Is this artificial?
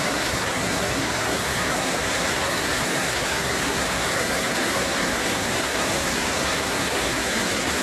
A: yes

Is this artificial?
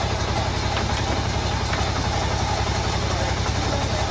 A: no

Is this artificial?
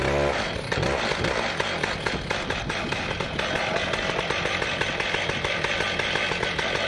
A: no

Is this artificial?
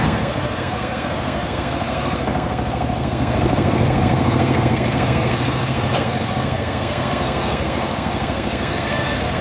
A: yes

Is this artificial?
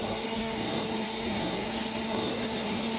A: yes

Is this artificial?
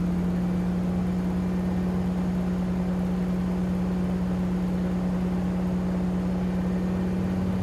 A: no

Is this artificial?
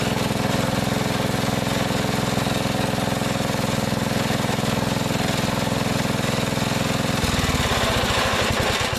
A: no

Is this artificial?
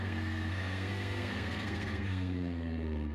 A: yes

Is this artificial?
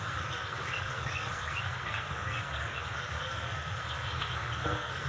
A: yes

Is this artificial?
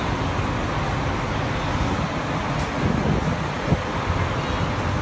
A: no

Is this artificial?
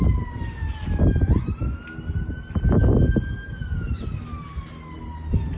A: no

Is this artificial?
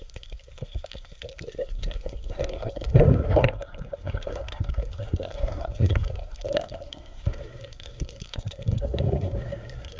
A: yes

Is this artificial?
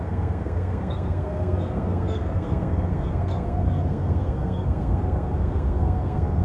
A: yes